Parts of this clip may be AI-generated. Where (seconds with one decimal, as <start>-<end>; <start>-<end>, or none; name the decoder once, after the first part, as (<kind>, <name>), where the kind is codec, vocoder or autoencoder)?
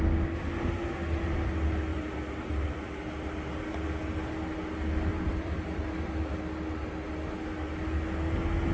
1.9-3.0 (vocoder, BigVGAN v2); 5.1-5.8